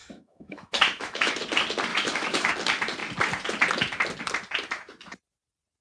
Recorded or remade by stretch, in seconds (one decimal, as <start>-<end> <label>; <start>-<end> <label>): 0.0-1.3 remade; 1.3-1.9 recorded; 1.9-2.5 remade; 2.5-5.8 recorded

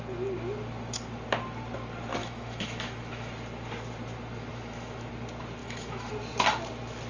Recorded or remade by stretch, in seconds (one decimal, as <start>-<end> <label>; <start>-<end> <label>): 0.0-2.2 recorded; 2.2-3.3 remade; 3.3-4.5 recorded; 4.5-5.1 remade; 5.1-5.6 recorded; 5.6-6.1 remade; 6.1-7.1 recorded

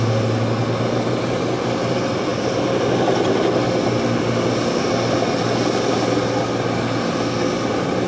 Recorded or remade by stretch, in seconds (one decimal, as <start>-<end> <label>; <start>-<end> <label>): 0.0-8.1 recorded

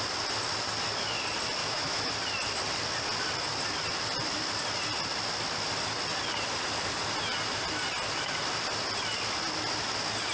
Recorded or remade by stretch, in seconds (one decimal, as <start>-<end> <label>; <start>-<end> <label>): 0.0-1.6 recorded; 1.6-2.1 remade; 2.1-10.3 recorded

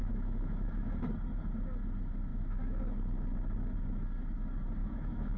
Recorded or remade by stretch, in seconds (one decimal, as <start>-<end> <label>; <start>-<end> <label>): 0.0-1.0 remade; 1.0-2.3 recorded; 2.3-2.8 remade; 2.8-4.8 recorded; 4.8-5.4 remade

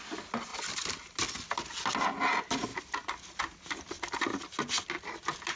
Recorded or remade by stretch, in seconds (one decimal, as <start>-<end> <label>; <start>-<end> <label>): 0.0-5.6 recorded

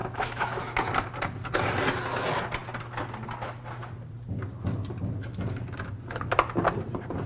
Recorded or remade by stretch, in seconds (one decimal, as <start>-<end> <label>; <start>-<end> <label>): 0.0-0.6 remade; 0.6-7.3 recorded

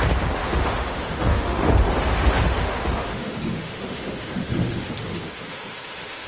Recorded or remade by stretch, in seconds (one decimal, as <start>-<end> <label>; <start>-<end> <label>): 0.0-0.4 recorded; 0.4-1.7 remade; 1.7-2.1 recorded; 2.1-6.3 remade